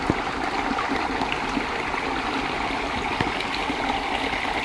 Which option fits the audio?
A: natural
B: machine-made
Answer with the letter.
A